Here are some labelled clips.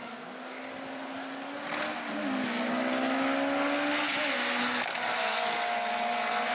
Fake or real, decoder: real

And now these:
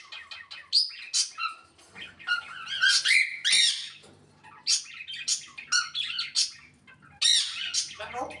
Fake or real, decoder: real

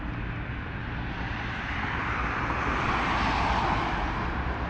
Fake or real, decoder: real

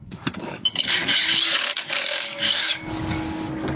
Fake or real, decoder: fake, codec, DAC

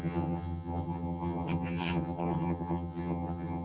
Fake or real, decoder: fake, vocoder, HiFi-GAN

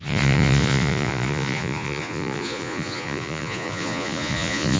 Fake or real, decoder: fake, vocoder, Vocos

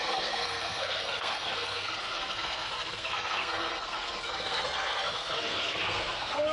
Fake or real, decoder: fake, codec, SNAC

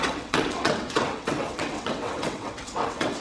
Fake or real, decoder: fake, vocoder, WaveNeXt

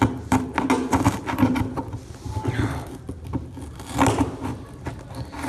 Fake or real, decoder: real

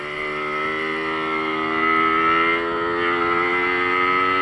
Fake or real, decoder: real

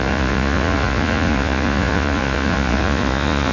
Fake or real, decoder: fake, vocoder, Vocos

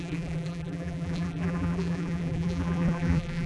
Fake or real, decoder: fake, vocoder, BigVGAN v2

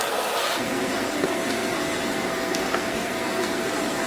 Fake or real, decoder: fake, codec, SNAC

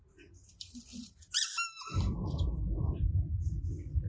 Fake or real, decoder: fake, vocoder, BigVGAN v2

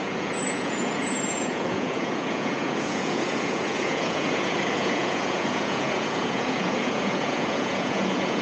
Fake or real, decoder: fake, vocoder, Vocos